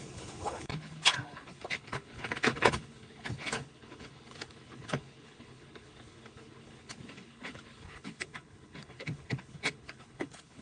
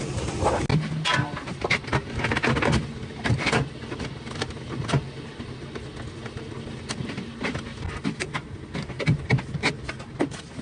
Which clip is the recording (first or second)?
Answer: second